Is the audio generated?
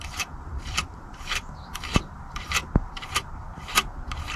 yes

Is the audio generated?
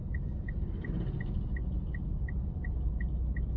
no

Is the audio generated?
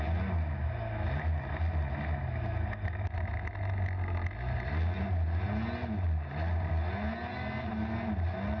no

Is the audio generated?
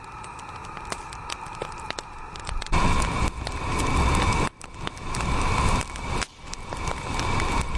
no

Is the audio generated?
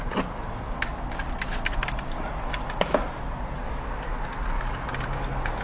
no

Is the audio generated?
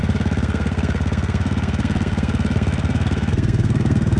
yes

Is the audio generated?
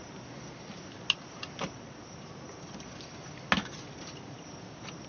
no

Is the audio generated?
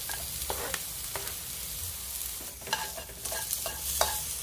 no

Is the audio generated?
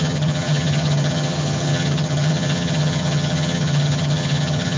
yes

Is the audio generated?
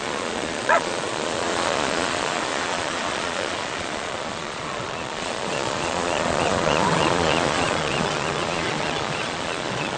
yes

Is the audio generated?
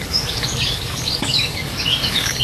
yes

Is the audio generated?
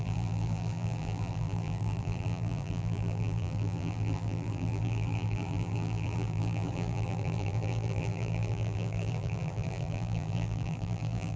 yes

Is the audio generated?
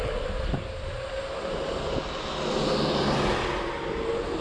no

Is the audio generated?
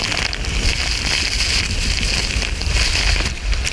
no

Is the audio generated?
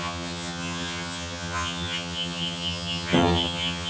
yes